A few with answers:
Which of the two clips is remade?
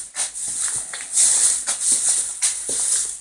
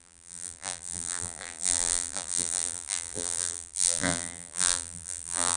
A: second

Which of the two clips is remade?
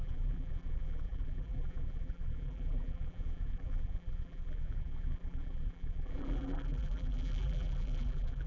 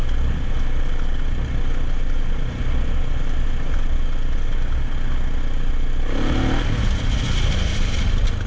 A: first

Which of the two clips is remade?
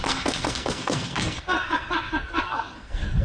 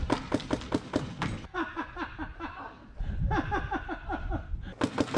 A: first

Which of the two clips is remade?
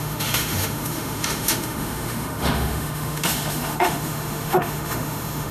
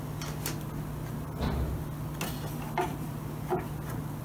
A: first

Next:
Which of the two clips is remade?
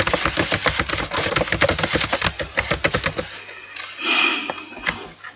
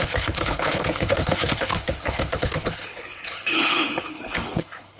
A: second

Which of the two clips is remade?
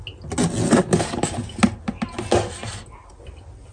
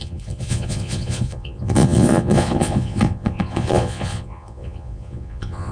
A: second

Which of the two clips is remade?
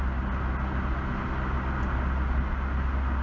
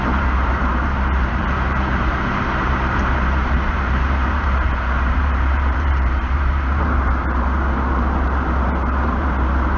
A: second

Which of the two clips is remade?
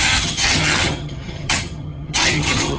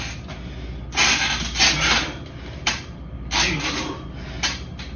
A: first